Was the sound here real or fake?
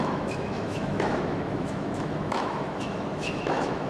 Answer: fake